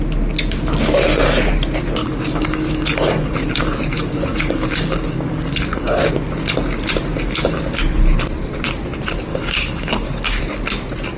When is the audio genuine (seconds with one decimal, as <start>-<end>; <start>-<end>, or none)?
0.0-2.0; 6.1-9.3; 10.4-11.2